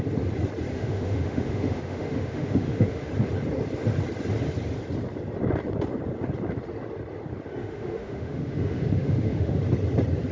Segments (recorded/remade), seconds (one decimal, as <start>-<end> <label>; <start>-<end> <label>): 0.0-0.7 recorded; 0.7-3.1 remade; 3.1-7.6 recorded; 7.6-9.6 remade; 9.6-10.3 recorded